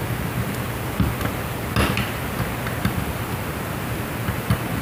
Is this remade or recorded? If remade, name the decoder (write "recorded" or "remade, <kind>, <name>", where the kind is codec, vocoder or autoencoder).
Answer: recorded